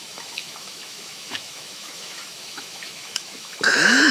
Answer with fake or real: fake